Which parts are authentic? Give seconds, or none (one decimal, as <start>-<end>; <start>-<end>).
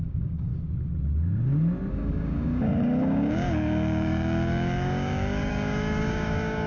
0.5-1.9